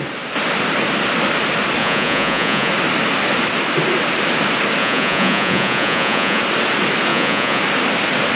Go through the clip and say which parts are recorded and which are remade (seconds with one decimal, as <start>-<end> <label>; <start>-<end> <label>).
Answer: 0.0-1.8 recorded; 1.8-2.7 remade; 2.7-4.8 recorded; 4.8-6.4 remade; 6.4-7.1 recorded; 7.1-7.6 remade; 7.6-8.4 recorded